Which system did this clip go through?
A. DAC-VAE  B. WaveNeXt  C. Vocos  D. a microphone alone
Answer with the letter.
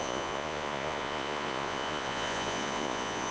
C